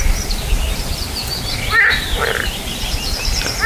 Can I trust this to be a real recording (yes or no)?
yes